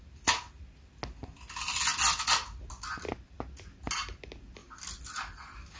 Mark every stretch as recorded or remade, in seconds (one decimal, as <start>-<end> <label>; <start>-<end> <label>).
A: 0.0-5.8 recorded